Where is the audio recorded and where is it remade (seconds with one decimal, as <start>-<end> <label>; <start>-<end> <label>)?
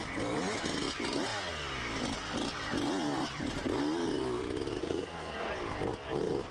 0.0-4.8 recorded; 4.8-5.5 remade; 5.5-6.5 recorded